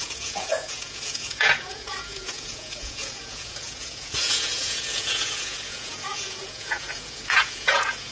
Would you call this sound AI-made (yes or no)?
yes